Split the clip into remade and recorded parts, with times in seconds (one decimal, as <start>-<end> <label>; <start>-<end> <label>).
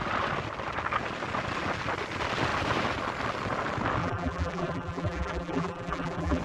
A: 0.0-4.0 recorded; 4.0-6.4 remade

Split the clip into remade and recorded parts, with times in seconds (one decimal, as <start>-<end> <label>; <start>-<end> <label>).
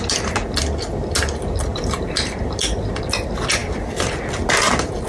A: 0.0-1.7 recorded; 1.7-2.5 remade; 2.5-3.6 recorded; 3.6-4.1 remade; 4.1-5.1 recorded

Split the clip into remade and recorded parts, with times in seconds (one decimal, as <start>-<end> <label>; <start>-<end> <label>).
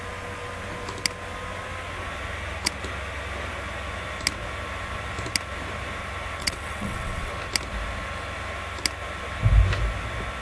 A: 0.0-6.4 recorded; 6.4-7.3 remade; 7.3-10.4 recorded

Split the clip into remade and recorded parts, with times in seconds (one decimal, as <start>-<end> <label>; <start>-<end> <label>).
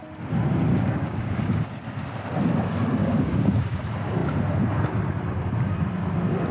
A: 0.0-0.7 recorded; 0.7-1.7 remade; 1.7-3.0 recorded; 3.0-3.8 remade; 3.8-6.5 recorded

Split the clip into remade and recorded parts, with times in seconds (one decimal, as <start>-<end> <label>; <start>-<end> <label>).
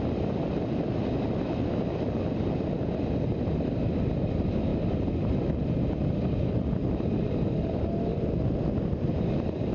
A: 0.0-9.7 recorded